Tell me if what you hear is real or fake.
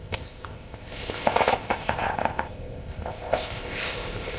fake